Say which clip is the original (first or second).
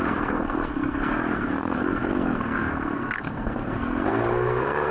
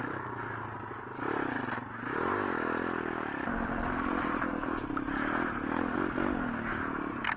second